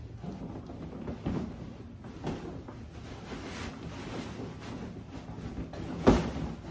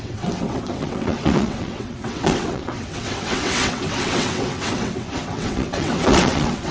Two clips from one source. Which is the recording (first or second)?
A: first